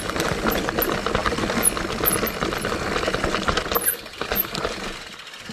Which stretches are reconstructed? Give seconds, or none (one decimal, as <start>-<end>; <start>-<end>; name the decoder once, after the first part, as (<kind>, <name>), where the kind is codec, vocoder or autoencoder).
none